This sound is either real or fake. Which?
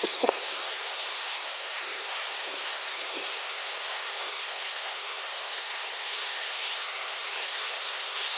fake